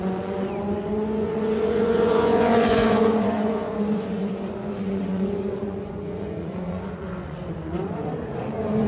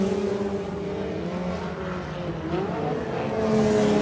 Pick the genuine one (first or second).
second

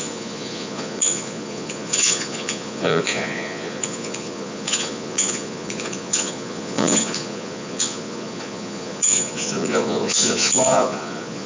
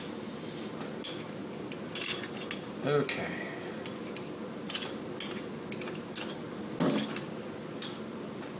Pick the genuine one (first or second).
second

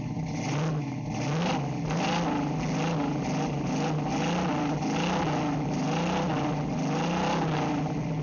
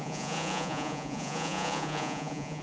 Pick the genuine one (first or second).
first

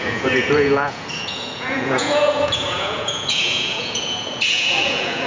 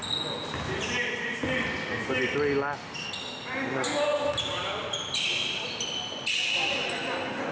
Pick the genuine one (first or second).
second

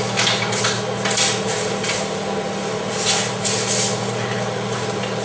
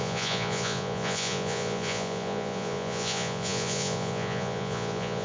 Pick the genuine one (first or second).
first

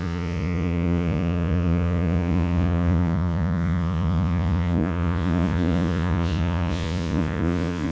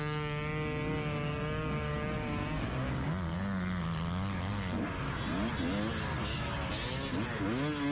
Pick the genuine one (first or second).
second